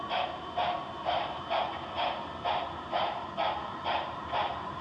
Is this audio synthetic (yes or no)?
yes